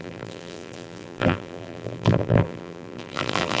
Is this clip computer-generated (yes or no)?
yes